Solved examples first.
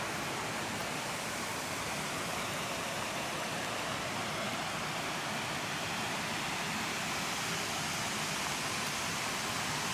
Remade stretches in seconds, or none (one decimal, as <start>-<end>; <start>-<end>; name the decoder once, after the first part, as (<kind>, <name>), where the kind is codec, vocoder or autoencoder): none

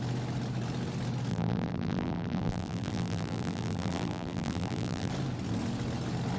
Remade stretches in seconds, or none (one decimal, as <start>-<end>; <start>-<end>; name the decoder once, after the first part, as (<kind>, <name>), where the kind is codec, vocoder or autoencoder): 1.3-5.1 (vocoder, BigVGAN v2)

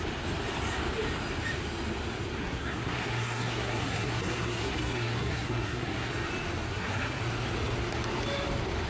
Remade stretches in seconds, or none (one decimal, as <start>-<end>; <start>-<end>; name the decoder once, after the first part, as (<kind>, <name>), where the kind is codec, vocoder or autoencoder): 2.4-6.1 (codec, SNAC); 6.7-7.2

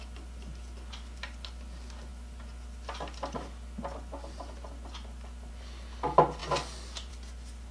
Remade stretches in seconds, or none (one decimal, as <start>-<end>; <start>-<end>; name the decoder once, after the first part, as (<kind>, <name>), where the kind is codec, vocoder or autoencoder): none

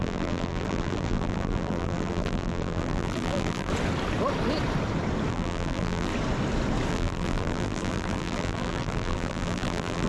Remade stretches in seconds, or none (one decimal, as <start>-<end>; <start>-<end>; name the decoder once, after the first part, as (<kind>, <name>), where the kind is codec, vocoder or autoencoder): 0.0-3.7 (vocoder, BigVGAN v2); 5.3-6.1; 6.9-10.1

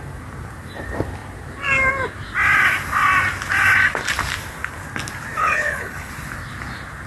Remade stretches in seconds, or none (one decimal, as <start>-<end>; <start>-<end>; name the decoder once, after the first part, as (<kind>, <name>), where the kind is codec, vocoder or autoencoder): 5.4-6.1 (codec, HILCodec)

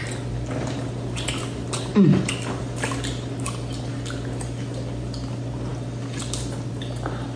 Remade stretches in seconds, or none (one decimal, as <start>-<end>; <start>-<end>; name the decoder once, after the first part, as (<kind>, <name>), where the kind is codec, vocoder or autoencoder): none

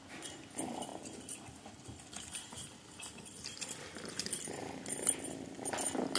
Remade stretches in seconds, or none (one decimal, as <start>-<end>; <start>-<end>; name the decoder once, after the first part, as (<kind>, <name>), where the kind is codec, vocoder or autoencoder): 0.9-4.6 (vocoder, BigVGAN v2)